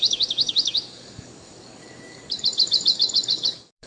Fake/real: fake